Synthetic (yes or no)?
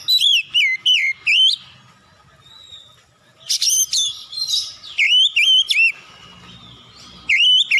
no